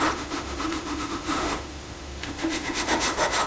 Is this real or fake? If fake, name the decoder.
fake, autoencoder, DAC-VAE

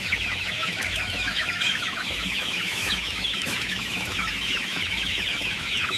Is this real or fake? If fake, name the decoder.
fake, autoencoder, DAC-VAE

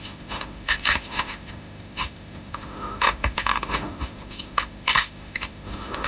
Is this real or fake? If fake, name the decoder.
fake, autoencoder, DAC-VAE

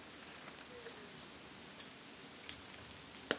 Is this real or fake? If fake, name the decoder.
real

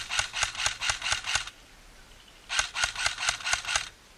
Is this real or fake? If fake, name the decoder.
real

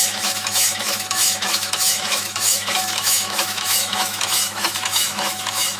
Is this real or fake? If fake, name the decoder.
fake, autoencoder, DAC-VAE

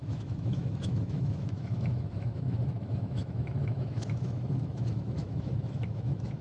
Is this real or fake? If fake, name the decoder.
fake, autoencoder, DAC-VAE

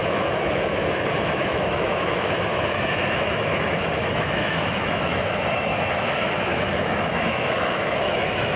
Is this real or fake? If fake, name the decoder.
fake, autoencoder, DAC-VAE